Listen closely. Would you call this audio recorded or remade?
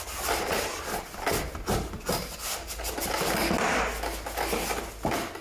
recorded